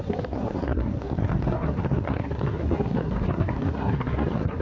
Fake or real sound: fake